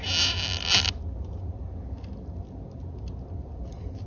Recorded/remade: recorded